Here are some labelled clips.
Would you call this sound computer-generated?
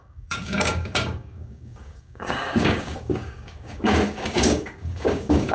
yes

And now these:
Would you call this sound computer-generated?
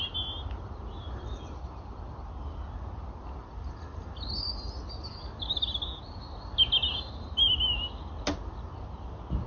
no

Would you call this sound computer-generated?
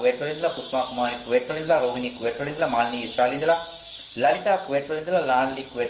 yes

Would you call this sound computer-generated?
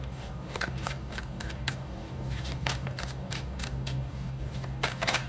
yes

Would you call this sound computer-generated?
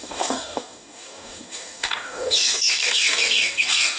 yes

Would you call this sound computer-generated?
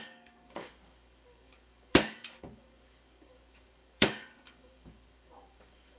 yes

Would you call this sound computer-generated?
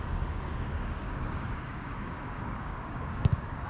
yes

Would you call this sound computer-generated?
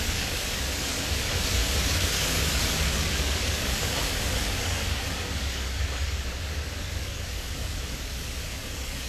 yes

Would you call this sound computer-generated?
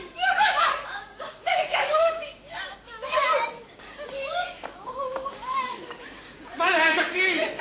yes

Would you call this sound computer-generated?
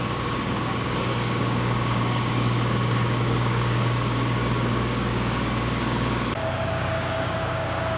yes